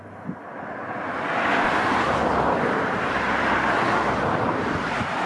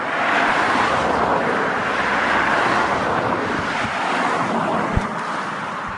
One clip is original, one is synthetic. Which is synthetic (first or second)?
second